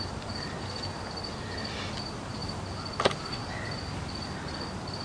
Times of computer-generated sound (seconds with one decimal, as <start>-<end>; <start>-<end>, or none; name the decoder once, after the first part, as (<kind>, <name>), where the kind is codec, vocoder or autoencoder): none